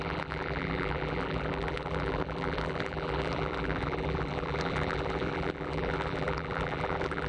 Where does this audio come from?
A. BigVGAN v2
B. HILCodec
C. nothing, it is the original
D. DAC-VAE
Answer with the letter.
A